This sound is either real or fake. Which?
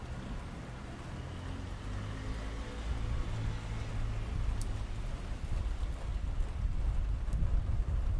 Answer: real